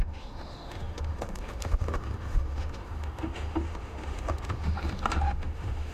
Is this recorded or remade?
remade